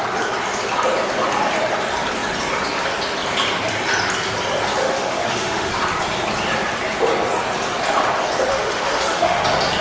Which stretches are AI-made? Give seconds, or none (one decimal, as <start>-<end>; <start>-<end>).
4.8-5.7; 8.5-9.4